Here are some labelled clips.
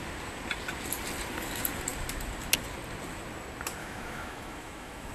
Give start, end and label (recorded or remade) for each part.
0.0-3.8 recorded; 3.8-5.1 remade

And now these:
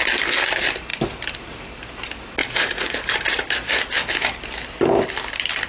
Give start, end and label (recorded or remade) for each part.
0.0-2.4 recorded; 2.4-3.0 remade; 3.0-5.7 recorded

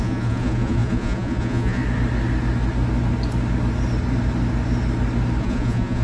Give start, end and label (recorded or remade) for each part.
0.0-1.8 remade; 1.8-5.4 recorded; 5.4-6.0 remade